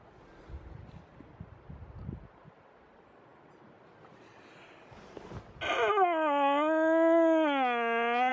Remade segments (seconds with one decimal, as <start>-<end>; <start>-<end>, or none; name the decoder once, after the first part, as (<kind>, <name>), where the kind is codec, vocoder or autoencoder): none